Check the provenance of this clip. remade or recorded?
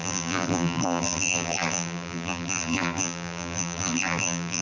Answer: remade